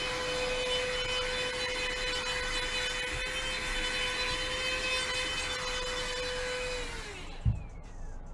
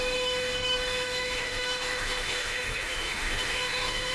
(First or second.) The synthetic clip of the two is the second